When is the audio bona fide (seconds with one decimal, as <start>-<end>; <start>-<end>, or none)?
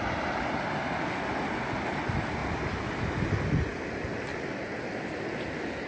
0.0-5.9